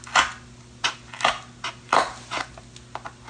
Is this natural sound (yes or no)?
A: yes